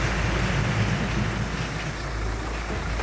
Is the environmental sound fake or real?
real